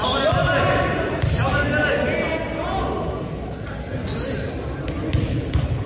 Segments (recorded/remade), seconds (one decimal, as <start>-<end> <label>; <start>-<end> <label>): 0.0-5.3 recorded; 5.3-5.9 remade